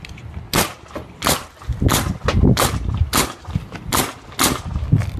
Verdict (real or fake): real